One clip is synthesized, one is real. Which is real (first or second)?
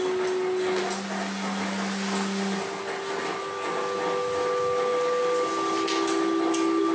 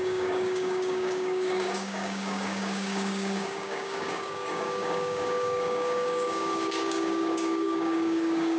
first